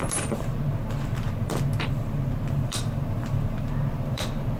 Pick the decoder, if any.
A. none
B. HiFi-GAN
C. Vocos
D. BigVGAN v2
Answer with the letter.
D